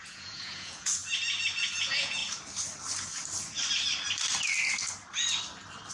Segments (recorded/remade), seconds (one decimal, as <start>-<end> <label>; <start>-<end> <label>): 0.0-1.0 remade; 1.0-1.6 recorded; 1.6-2.2 remade; 2.2-5.9 recorded